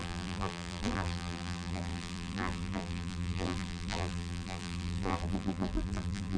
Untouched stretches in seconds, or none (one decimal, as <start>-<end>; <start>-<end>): none